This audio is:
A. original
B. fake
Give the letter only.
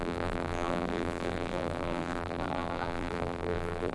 B